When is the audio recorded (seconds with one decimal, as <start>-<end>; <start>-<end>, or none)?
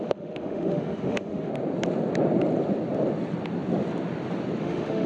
1.5-4.6